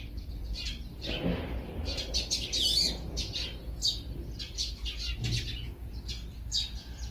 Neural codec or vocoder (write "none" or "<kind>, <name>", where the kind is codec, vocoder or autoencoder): none